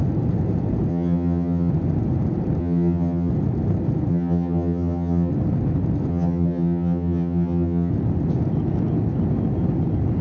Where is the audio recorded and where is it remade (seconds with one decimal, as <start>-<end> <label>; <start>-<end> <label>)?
0.0-0.9 recorded; 0.9-1.7 remade; 1.7-2.6 recorded; 2.6-3.3 remade; 3.3-4.1 recorded; 4.1-5.3 remade; 5.3-6.1 recorded; 6.1-7.9 remade; 7.9-10.2 recorded